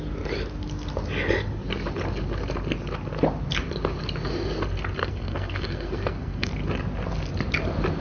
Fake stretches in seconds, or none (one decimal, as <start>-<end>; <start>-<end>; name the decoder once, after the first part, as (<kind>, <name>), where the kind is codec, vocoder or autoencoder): 5.0-6.5 (codec, SNAC)